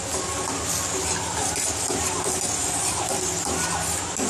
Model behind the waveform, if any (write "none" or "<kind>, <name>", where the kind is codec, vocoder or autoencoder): none